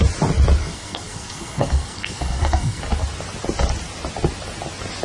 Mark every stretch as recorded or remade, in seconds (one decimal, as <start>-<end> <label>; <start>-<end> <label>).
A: 0.0-0.6 recorded; 0.6-2.8 remade; 2.8-5.0 recorded